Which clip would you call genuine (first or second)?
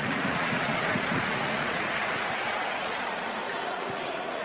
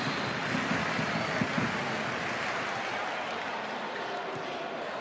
second